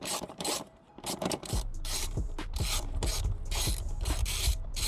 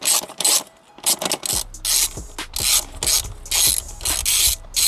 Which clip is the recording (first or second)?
second